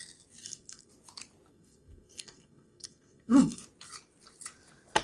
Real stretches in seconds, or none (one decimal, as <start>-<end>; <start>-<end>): 0.0-0.4; 0.9-1.5; 3.6-5.0